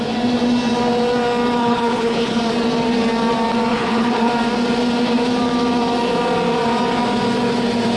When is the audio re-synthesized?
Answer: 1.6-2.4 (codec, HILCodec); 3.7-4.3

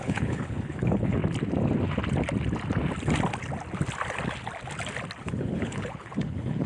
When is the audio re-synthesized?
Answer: 0.0-1.2 (codec, HILCodec); 5.2-6.7

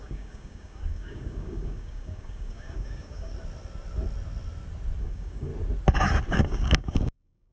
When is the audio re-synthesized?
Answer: 0.0-3.3 (codec, DAC); 5.0-5.5; 6.3-7.5

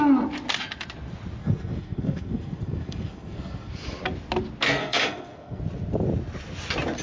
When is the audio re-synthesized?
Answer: 1.4-3.7 (codec, SNAC); 4.8-5.6

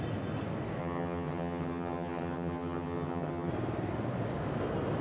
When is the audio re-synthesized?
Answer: 0.8-3.5 (vocoder, HiFi-GAN)

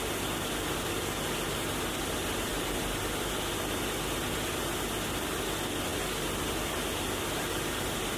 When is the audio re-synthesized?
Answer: none

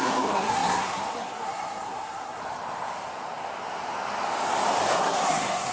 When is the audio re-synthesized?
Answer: 0.0-2.4 (codec, SNAC); 4.9-5.7